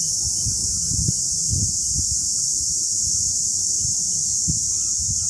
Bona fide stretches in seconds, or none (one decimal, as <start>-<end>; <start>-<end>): 0.0-5.3